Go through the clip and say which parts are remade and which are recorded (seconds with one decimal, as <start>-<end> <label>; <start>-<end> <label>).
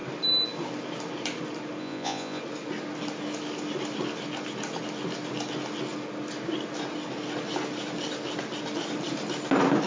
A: 0.0-1.8 recorded; 1.8-2.4 remade; 2.4-9.9 recorded